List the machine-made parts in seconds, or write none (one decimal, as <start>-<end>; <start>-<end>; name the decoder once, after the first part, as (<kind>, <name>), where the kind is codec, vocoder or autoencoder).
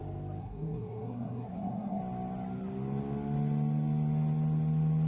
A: 0.4-2.0 (codec, SNAC)